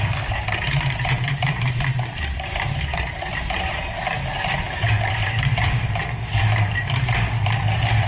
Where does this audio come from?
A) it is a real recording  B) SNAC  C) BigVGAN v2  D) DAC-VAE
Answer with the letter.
C